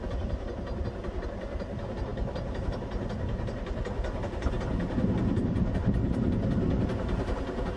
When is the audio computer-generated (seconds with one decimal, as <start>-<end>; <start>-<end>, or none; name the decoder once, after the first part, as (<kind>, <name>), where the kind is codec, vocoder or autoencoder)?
none